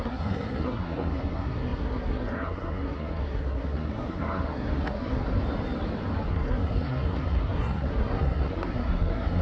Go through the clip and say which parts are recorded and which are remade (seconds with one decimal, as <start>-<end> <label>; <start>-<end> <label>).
0.0-5.2 remade; 5.2-6.3 recorded; 6.3-9.4 remade